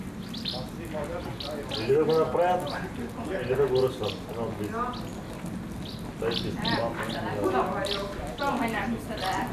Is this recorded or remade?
recorded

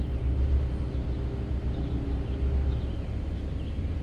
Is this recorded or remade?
recorded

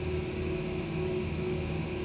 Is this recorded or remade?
recorded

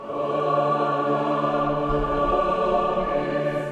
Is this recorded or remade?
remade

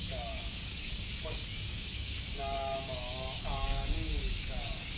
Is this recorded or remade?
remade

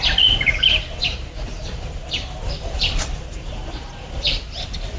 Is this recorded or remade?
recorded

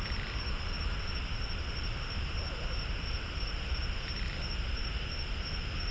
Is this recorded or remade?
recorded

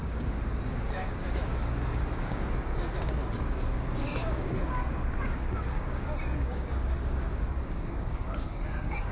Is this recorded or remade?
remade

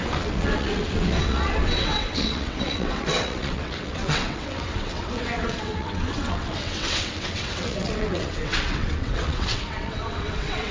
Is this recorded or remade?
remade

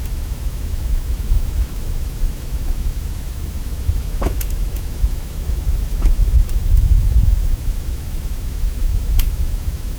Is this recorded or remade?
remade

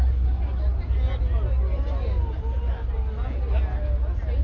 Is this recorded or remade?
recorded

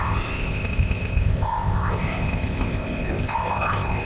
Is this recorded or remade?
remade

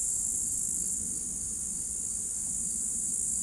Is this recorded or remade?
remade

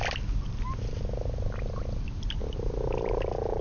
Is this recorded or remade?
recorded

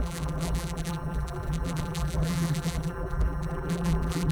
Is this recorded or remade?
remade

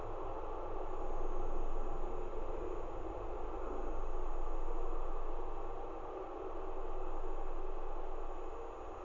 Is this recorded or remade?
recorded